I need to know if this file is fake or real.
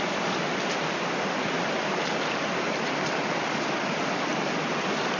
real